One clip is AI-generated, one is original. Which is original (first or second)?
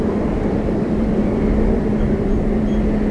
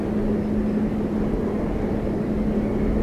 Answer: second